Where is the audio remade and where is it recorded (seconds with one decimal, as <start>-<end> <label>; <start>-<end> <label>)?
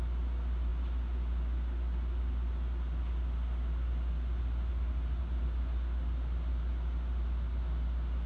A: 0.0-8.3 recorded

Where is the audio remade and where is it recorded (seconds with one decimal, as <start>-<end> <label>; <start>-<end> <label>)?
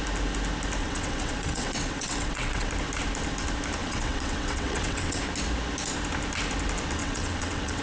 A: 0.0-0.8 recorded; 0.8-2.7 remade; 2.7-3.8 recorded; 3.8-5.2 remade; 5.2-7.0 recorded; 7.0-7.8 remade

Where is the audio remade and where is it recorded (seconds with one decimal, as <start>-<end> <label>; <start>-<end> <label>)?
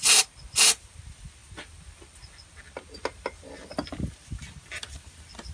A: 0.0-5.5 recorded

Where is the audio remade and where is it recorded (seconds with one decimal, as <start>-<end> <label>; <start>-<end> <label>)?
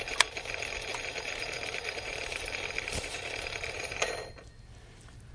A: 0.0-0.9 recorded; 0.9-4.1 remade; 4.1-5.3 recorded